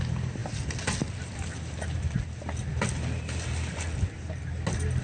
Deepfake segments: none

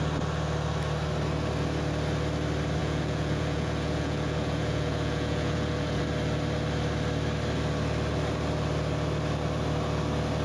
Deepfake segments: 2.8-6.0 (vocoder, Vocos)

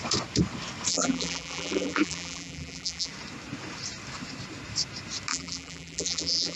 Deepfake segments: 0.9-3.1 (vocoder, BigVGAN v2); 5.3-6.6

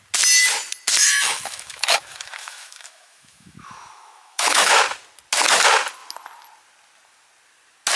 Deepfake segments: 1.0-4.8 (autoencoder, DAC-VAE)